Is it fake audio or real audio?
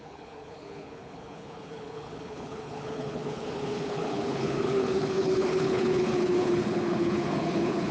fake